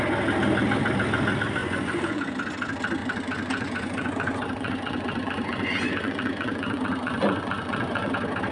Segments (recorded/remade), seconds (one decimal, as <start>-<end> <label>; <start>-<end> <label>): 0.0-1.6 recorded; 1.6-2.3 remade; 2.3-3.0 recorded; 3.0-8.1 remade; 8.1-8.5 recorded